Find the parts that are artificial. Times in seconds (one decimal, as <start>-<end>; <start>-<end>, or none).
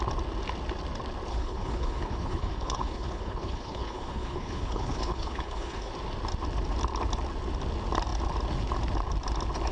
1.3-5.9